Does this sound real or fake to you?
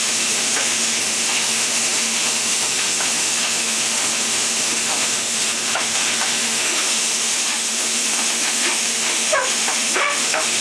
fake